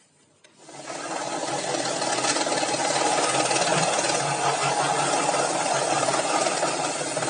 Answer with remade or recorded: recorded